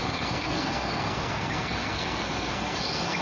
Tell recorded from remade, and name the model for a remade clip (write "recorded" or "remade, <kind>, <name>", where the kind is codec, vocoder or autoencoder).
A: remade, codec, SNAC